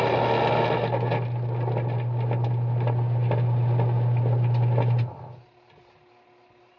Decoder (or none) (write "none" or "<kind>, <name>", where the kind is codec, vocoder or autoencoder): none